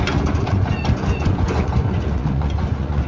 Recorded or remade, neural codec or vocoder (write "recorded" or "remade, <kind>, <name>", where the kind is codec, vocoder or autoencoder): remade, vocoder, Vocos